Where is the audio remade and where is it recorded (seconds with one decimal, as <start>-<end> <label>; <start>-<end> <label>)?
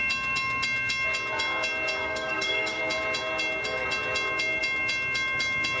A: 0.0-2.0 recorded; 2.0-2.8 remade; 2.8-5.8 recorded